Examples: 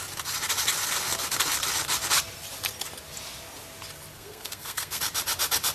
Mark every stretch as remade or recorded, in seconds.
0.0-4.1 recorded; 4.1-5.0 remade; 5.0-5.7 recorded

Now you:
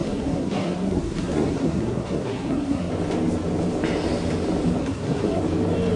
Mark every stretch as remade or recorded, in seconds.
0.0-2.9 remade; 2.9-4.8 recorded; 4.8-5.4 remade; 5.4-6.0 recorded

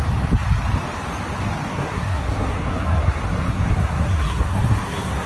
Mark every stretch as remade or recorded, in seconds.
0.0-1.7 recorded; 1.7-5.3 remade

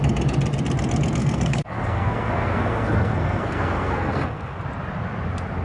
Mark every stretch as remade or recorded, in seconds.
0.0-1.2 recorded; 1.2-4.6 remade; 4.6-5.6 recorded

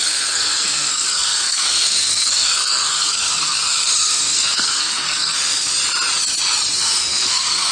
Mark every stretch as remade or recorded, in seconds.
0.0-5.7 remade; 5.7-6.7 recorded; 6.7-7.7 remade

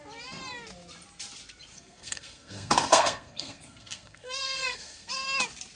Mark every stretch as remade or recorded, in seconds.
0.0-1.7 recorded; 1.7-5.1 remade; 5.1-5.7 recorded

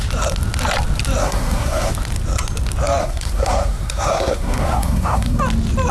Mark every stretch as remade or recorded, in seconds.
0.0-1.2 recorded; 1.2-1.9 remade; 1.9-3.0 recorded; 3.0-5.4 remade; 5.4-5.9 recorded

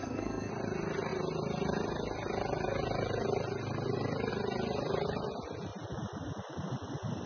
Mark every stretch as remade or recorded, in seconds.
0.0-0.5 remade; 0.5-7.3 recorded